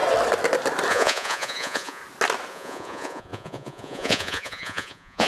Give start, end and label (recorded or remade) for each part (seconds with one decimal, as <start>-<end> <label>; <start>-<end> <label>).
0.0-0.9 recorded; 0.9-2.0 remade; 2.0-2.5 recorded; 2.5-5.3 remade